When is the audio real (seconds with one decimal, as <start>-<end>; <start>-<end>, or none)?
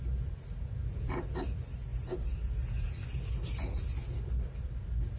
0.0-5.2